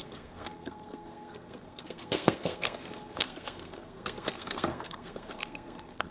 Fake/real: fake